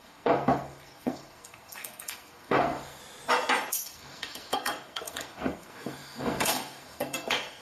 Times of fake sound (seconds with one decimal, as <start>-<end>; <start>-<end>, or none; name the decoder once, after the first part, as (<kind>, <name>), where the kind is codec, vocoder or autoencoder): 0.0-3.0 (codec, SNAC); 3.7-7.6